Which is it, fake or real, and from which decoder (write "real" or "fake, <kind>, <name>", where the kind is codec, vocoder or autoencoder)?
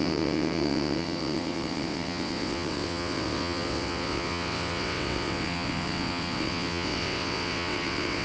fake, vocoder, WaveNeXt